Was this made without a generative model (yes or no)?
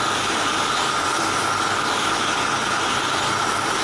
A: yes